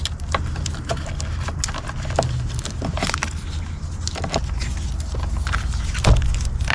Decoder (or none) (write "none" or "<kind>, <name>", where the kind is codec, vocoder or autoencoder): none